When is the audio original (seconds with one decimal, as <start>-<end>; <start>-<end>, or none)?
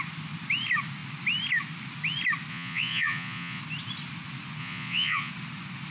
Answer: 0.0-2.5; 3.6-4.6; 5.3-5.9